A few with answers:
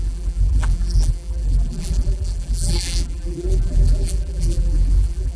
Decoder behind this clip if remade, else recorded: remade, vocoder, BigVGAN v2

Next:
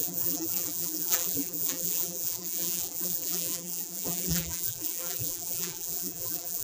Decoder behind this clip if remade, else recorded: remade, vocoder, BigVGAN v2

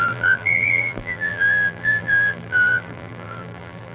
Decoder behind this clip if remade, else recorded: remade, vocoder, BigVGAN v2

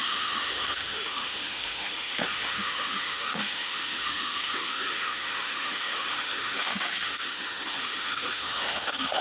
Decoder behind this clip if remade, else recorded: remade, autoencoder, DAC-VAE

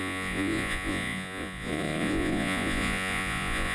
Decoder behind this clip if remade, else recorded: remade, vocoder, Vocos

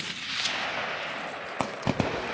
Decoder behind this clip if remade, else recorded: recorded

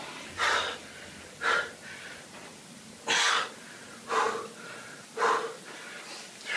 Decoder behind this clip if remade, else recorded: recorded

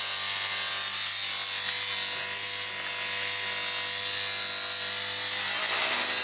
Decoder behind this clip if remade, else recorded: recorded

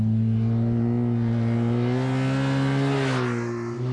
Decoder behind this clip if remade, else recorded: recorded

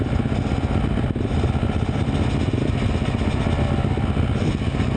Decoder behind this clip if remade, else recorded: recorded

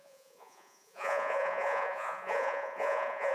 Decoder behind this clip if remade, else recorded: remade, vocoder, Vocos